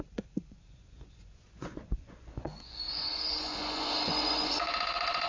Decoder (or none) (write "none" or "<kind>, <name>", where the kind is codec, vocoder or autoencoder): vocoder, Vocos